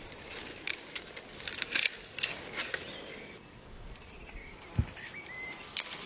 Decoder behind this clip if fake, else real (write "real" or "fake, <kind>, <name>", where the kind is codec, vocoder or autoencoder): fake, vocoder, BigVGAN v2